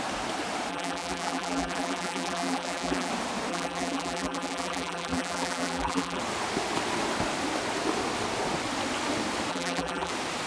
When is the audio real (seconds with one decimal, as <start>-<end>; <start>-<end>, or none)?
0.0-0.7; 3.1-3.5; 6.2-9.5; 10.1-10.5